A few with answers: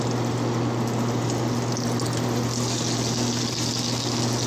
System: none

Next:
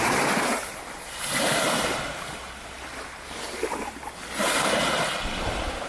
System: none